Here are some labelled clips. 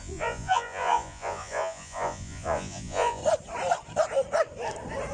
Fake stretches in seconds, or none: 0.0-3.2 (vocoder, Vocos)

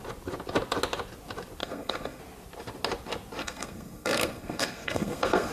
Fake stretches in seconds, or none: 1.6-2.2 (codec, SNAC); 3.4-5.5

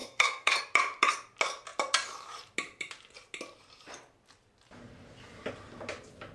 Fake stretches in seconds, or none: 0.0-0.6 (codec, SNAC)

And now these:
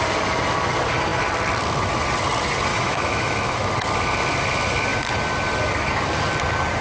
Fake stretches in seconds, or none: 2.7-3.7 (autoencoder, DAC-VAE)